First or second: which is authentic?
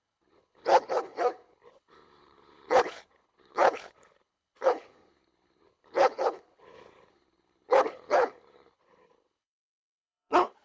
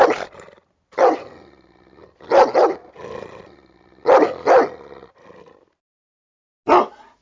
second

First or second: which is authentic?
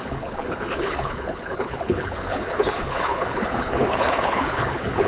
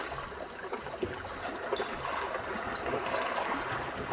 second